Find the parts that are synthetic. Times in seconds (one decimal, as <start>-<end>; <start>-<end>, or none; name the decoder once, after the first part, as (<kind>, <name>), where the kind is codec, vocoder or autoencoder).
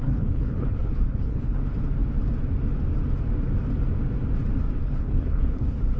0.0-1.6 (codec, HILCodec); 4.8-6.0